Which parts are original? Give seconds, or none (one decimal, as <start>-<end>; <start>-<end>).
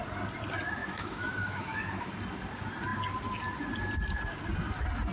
0.0-0.8; 2.1-5.1